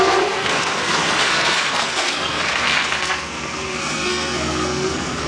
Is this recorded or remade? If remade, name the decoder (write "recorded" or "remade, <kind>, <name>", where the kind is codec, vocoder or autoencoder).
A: remade, codec, SNAC